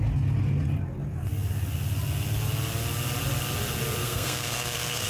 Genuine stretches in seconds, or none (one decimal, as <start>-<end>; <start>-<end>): 0.0-4.0